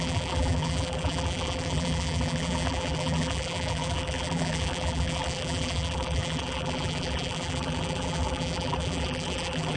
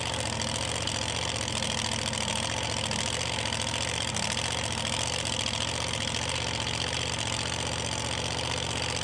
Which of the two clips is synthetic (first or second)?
first